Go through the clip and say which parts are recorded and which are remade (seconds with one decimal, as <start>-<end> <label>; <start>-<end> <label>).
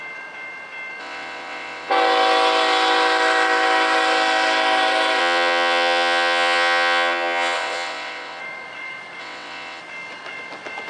0.0-1.0 recorded; 1.0-1.9 remade; 1.9-5.2 recorded; 5.2-8.4 remade; 8.4-9.2 recorded; 9.2-9.8 remade; 9.8-10.9 recorded